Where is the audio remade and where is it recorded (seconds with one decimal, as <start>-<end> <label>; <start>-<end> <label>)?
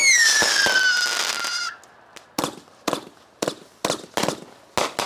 0.0-5.1 recorded